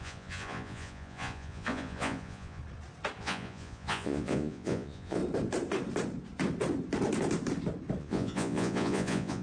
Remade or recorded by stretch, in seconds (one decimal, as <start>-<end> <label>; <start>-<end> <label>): 0.0-2.6 remade; 2.6-3.2 recorded; 3.2-5.2 remade; 5.2-8.0 recorded; 8.0-9.4 remade